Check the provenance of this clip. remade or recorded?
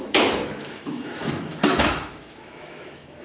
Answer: remade